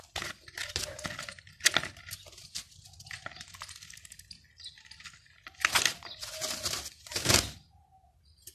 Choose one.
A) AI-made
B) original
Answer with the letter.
B